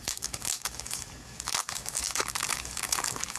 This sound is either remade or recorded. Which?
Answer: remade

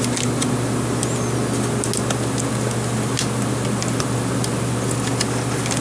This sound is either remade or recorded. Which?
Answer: recorded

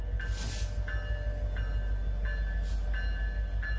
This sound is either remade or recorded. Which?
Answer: recorded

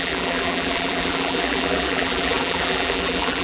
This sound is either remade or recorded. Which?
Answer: remade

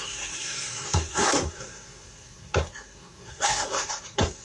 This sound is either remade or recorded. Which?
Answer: remade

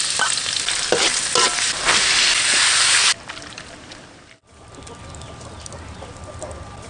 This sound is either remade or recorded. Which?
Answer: recorded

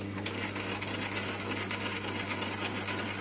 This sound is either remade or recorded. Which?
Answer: recorded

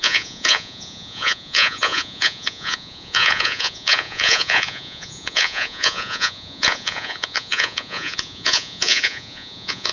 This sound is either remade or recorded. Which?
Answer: remade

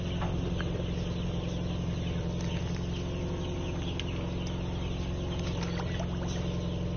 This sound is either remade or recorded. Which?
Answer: recorded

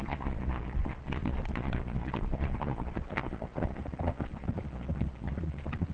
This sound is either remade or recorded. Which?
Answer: remade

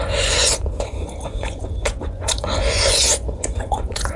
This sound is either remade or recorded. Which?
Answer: remade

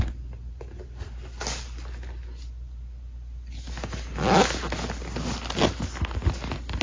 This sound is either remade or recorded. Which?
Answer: recorded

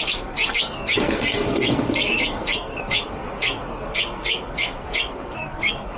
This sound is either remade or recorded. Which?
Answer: remade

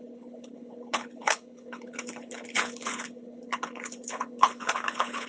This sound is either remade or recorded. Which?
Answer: remade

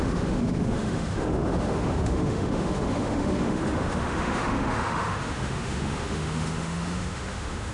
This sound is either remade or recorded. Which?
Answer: remade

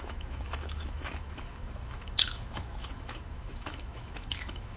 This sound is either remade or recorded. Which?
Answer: remade